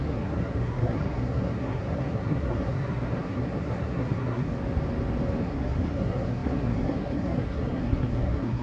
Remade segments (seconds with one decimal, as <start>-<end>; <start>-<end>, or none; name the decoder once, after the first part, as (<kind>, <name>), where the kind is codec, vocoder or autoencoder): 0.0-4.5 (codec, SNAC); 5.4-8.6